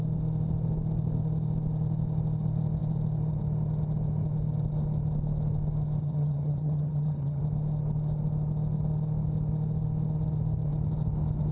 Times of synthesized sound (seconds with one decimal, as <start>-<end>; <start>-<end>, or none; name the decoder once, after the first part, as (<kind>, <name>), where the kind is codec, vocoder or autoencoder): 6.0-7.4 (vocoder, HiFi-GAN)